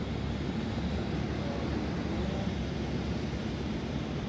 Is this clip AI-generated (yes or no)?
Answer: no